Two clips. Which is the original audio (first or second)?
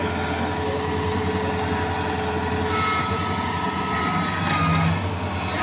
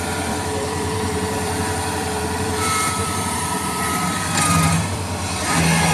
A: first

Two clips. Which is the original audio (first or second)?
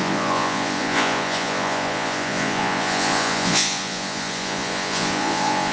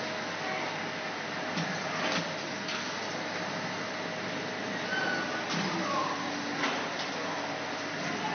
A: second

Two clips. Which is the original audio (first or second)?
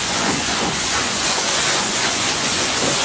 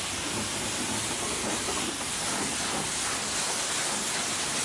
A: second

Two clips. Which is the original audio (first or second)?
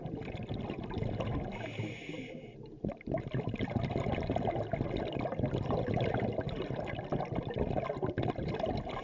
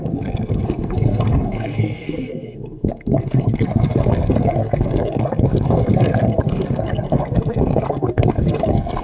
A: first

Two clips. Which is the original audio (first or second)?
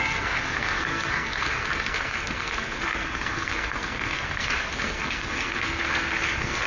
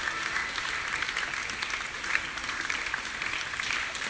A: second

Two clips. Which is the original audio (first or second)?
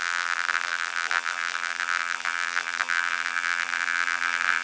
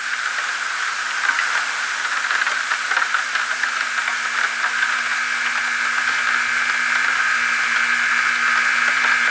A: second